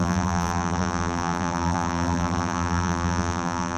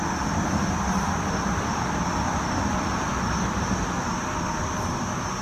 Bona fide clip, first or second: second